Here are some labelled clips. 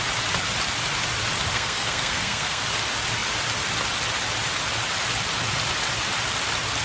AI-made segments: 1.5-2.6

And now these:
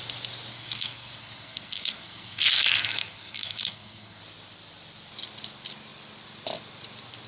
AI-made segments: 0.5-4.2

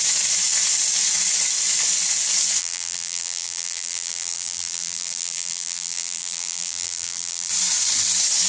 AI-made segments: 2.6-7.5

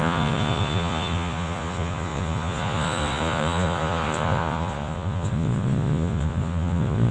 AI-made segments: 0.0-7.1

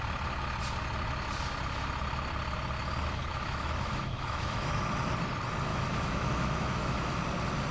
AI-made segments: 3.3-4.9; 5.7-7.2